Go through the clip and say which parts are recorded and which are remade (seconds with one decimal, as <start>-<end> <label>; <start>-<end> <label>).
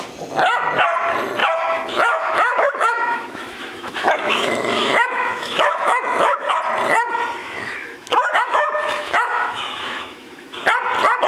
0.0-1.4 recorded; 1.4-6.5 remade; 6.5-7.4 recorded; 7.4-10.6 remade; 10.6-11.3 recorded